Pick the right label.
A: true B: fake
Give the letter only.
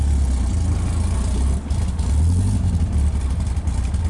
A